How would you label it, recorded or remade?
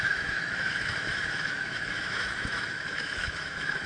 remade